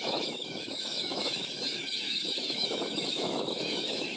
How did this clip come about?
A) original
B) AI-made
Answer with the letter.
B